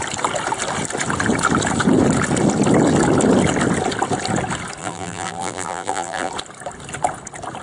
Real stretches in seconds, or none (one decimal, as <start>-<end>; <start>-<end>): 0.0-4.8; 6.3-7.6